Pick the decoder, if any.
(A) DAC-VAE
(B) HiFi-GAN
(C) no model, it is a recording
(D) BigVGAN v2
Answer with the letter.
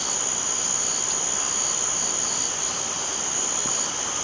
C